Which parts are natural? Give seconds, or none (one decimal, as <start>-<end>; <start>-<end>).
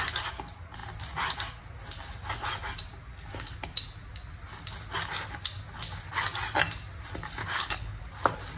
0.0-7.4; 8.0-8.6